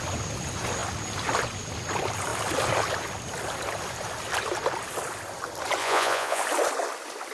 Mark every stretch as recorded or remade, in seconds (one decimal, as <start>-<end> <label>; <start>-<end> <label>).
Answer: 0.0-5.8 recorded; 5.8-6.4 remade; 6.4-7.3 recorded

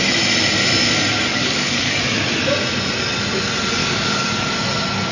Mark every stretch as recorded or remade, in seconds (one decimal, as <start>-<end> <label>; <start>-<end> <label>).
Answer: 0.0-1.3 recorded; 1.3-2.0 remade; 2.0-3.8 recorded; 3.8-4.5 remade; 4.5-5.1 recorded